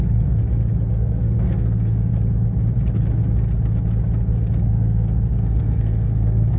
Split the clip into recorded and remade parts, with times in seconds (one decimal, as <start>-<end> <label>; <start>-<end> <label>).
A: 0.0-0.4 remade; 0.4-0.9 recorded; 0.9-2.1 remade; 2.1-4.6 recorded; 4.6-6.6 remade